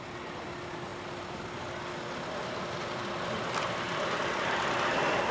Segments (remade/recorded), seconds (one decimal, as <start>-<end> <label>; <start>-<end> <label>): 0.0-5.3 recorded